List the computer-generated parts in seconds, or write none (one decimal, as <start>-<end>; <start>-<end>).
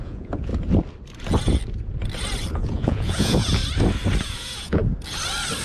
0.0-0.5; 2.5-3.6; 4.2-4.8